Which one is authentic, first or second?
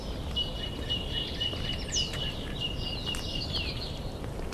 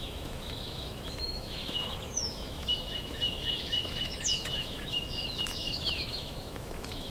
first